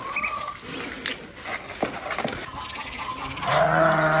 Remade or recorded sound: recorded